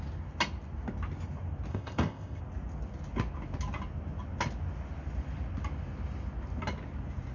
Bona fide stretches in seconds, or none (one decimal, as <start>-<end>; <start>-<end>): 0.0-1.7; 2.4-7.3